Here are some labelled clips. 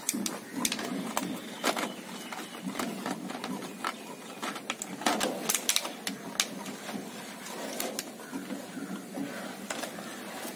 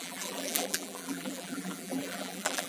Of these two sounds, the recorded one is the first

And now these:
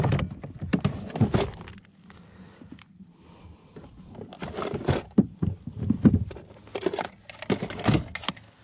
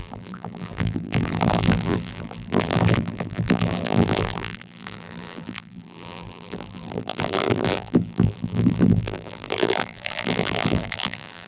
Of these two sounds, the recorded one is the first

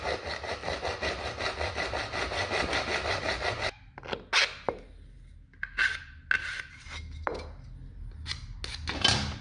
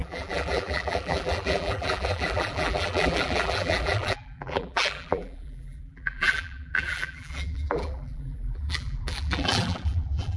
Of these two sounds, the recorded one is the first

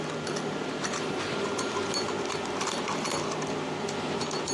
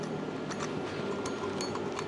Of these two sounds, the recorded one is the second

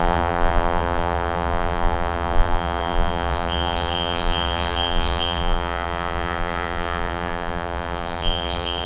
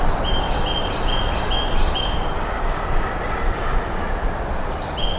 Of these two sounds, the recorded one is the second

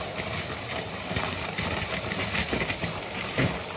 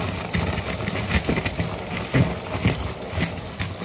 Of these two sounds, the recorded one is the second